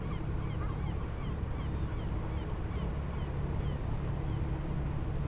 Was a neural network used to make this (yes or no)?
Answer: no